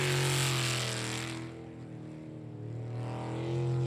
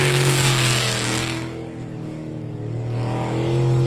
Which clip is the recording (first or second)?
first